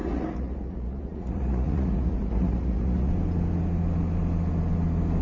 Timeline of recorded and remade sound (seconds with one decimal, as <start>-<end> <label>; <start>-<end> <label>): 0.0-3.1 remade; 3.1-5.2 recorded